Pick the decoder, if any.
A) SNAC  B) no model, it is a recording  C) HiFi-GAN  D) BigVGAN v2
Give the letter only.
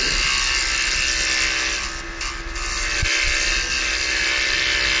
B